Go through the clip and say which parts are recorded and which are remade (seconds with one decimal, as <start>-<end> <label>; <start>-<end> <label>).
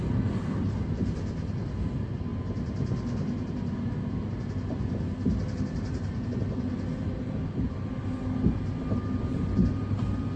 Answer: 0.0-10.4 recorded